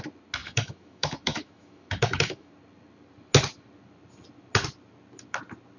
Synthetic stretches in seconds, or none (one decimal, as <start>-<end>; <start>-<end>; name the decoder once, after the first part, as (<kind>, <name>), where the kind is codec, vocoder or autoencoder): 0.4-2.5 (autoencoder, DAC-VAE)